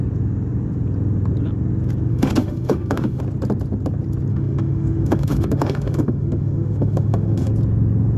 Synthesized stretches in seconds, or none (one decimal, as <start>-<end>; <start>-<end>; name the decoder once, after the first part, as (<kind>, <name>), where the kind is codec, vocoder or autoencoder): 2.1-3.2 (autoencoder, DAC-VAE); 4.3-7.5